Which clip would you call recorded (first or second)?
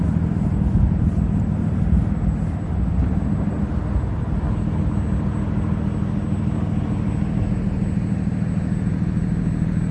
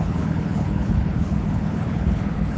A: first